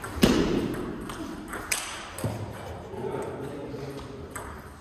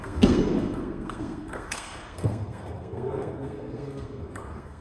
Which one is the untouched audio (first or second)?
first